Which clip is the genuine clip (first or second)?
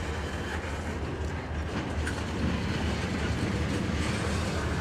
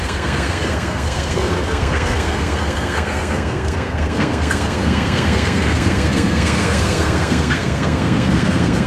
first